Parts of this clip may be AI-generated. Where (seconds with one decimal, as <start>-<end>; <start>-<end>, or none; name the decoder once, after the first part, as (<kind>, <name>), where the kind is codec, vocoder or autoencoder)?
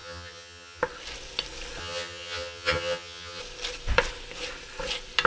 0.0-0.8 (vocoder, HiFi-GAN); 1.8-3.4